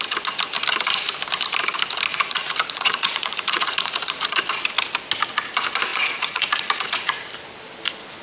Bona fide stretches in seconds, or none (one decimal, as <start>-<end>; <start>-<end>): 0.0-2.1; 4.4-5.9; 7.3-8.2